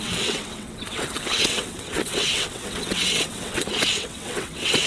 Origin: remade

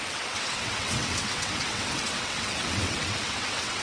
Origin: remade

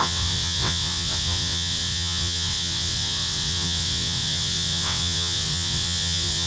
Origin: remade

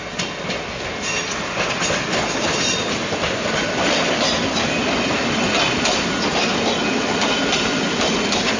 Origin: recorded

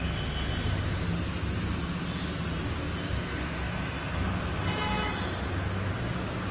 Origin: recorded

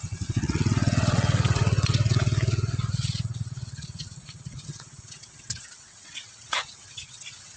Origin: remade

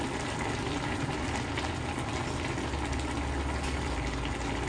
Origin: recorded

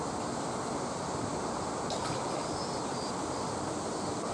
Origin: recorded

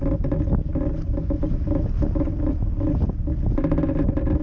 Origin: recorded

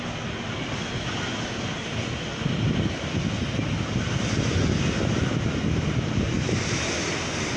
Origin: recorded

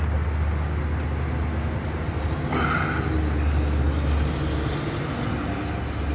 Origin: recorded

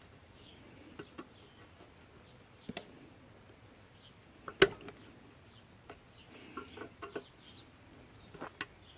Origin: recorded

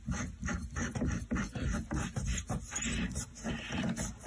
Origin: recorded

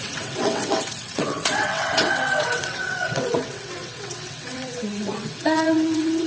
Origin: remade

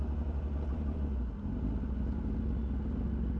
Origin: recorded